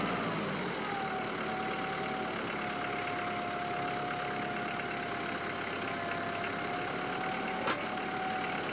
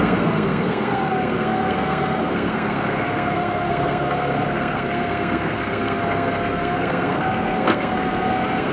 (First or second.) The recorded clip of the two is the first